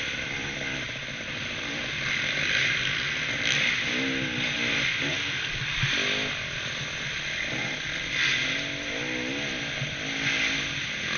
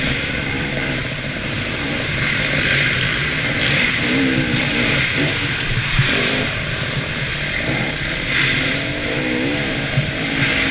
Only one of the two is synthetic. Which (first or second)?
second